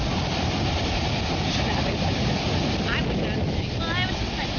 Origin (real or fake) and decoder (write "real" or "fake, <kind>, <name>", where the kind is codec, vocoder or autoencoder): real